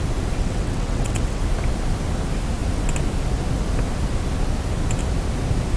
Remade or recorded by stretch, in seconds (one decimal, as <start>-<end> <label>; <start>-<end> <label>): 0.0-0.4 recorded; 0.4-1.4 remade; 1.4-5.8 recorded